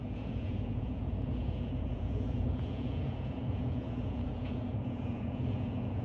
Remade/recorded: remade